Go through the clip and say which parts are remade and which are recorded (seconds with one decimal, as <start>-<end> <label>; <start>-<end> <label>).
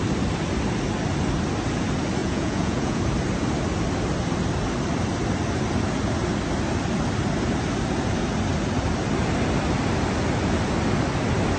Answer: 0.0-2.2 recorded; 2.2-3.0 remade; 3.0-11.6 recorded